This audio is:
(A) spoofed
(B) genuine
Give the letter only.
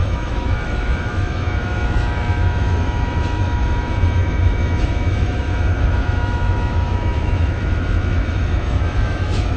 A